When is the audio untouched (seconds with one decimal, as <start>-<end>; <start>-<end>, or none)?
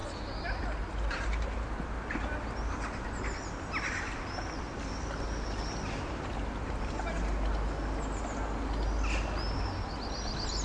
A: 0.0-10.6